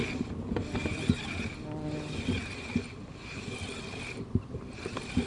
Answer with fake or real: real